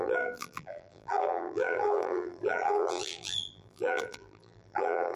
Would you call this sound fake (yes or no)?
yes